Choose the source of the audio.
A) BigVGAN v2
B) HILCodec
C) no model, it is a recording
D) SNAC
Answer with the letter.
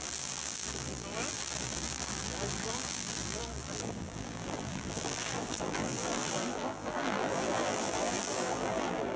A